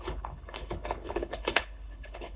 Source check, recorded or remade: remade